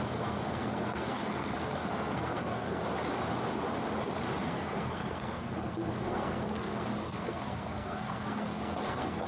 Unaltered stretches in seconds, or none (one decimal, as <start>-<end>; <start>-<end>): 2.8-4.4

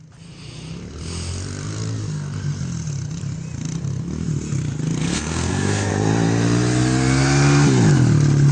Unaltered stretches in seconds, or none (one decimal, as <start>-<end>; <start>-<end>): 0.0-5.0; 5.9-8.5